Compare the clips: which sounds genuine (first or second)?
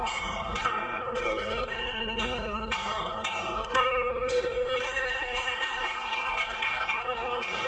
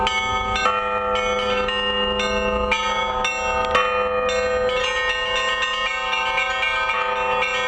second